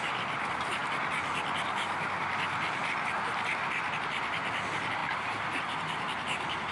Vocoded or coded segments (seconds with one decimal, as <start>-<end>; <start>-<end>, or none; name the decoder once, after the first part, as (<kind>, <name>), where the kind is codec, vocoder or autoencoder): none